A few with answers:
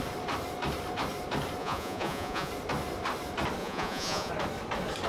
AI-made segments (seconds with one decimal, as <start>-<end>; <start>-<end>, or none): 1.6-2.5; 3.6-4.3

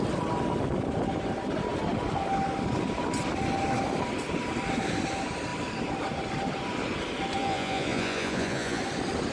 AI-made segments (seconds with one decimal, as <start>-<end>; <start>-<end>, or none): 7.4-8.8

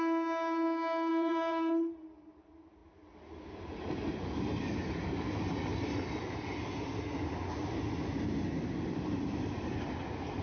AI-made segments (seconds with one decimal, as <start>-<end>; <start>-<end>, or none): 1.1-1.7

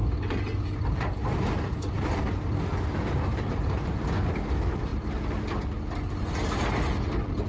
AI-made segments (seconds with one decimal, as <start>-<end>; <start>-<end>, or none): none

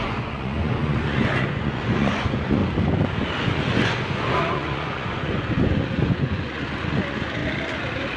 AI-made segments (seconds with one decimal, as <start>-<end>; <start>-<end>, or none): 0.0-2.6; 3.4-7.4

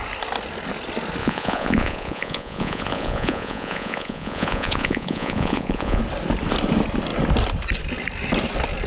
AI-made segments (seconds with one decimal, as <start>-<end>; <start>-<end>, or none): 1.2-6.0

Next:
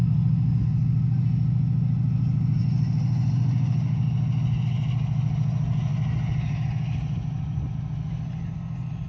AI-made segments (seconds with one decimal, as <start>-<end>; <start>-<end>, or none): none